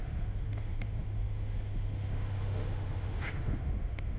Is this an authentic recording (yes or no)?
no